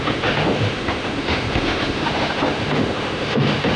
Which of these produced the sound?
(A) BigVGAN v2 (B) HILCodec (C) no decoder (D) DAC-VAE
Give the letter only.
D